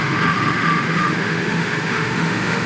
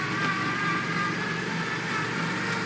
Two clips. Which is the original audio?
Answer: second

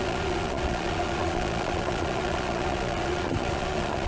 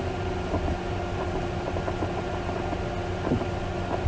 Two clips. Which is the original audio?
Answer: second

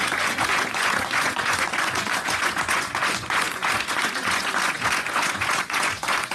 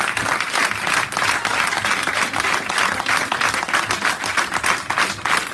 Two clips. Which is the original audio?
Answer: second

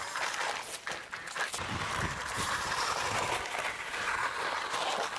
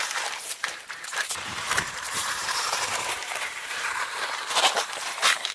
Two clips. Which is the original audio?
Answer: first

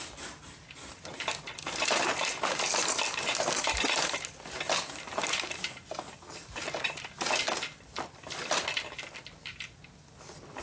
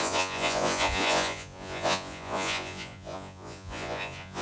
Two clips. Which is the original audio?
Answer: first